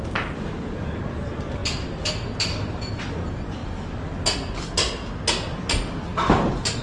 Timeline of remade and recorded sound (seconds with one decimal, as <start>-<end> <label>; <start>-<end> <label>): 0.0-6.8 recorded